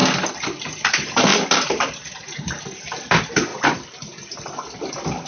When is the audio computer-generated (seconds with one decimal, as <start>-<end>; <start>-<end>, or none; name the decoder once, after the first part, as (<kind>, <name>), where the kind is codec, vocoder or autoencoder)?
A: 0.6-3.5 (vocoder, BigVGAN v2)